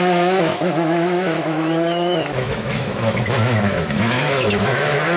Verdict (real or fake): fake